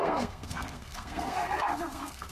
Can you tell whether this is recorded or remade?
remade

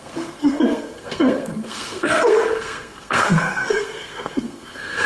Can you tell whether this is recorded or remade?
remade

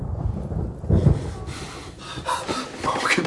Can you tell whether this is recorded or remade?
recorded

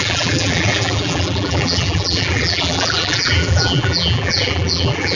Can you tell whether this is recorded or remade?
remade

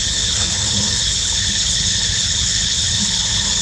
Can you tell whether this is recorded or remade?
remade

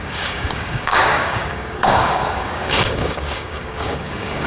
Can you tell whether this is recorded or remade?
remade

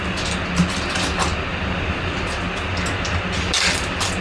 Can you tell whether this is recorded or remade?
recorded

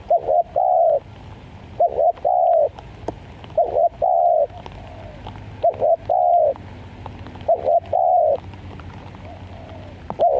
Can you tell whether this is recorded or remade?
recorded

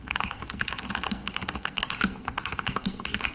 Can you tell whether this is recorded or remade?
remade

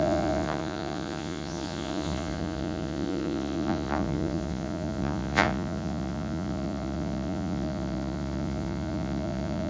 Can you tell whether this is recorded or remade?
remade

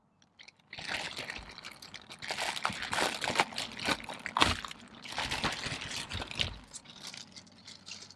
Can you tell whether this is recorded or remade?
recorded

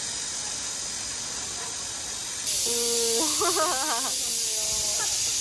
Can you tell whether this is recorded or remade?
recorded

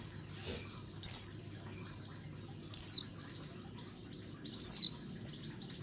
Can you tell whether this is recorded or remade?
recorded